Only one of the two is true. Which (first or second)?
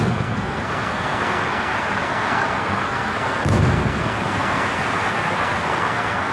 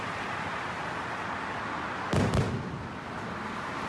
second